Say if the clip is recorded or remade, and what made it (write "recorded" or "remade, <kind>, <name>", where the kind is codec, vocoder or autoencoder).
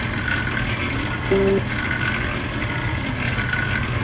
recorded